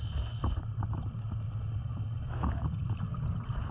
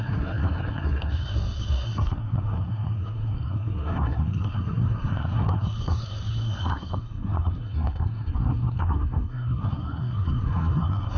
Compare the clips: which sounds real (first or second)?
first